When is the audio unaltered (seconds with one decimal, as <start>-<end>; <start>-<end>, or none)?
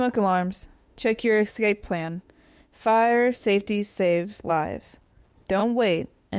0.0-0.7; 4.5-5.6